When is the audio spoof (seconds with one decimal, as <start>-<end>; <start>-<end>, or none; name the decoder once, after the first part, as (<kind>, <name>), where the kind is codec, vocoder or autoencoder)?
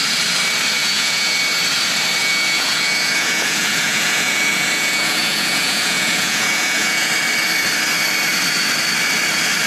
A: 0.8-1.4 (vocoder, Vocos); 2.2-7.1